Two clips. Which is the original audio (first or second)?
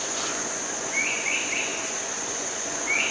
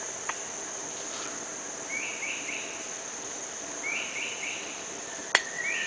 second